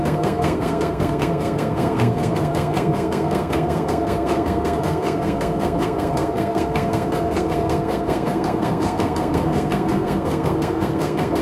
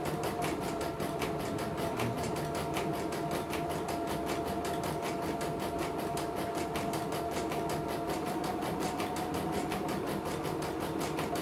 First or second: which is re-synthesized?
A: first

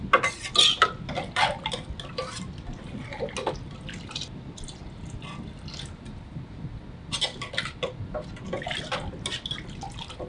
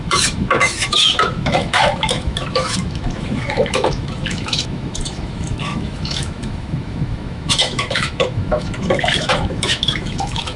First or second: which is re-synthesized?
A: second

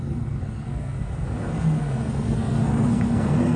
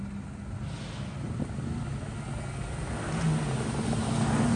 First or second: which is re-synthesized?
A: first